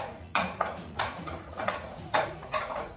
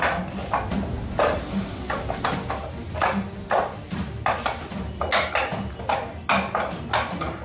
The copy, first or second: first